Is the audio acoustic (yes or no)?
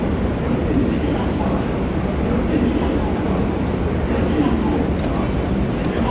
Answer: yes